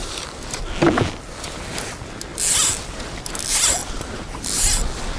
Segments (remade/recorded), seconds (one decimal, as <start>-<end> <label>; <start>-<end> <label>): 0.0-0.6 remade; 0.6-3.8 recorded; 3.8-4.6 remade; 4.6-5.2 recorded